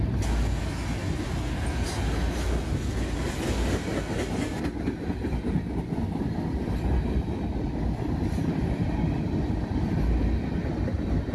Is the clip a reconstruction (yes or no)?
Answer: no